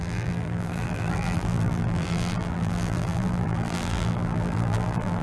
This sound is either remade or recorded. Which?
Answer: remade